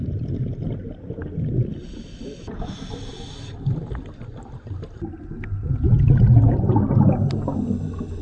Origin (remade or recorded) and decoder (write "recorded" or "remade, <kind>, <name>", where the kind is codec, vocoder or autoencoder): recorded